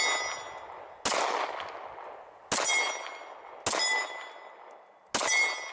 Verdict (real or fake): real